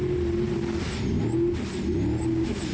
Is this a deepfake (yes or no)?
no